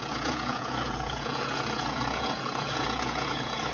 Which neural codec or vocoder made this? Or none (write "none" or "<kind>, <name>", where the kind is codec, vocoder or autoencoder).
vocoder, Vocos